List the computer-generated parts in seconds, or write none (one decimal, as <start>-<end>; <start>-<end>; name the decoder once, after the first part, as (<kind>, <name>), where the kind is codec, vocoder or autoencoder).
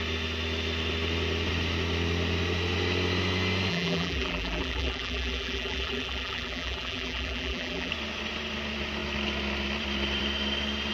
3.7-7.9 (vocoder, BigVGAN v2)